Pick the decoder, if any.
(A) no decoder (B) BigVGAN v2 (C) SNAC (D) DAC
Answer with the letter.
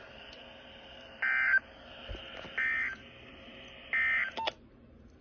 A